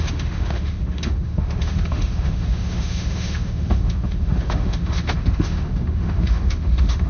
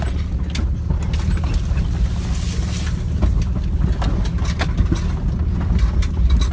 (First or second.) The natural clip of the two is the second